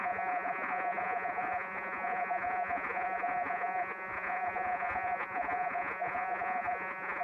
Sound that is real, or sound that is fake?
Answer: fake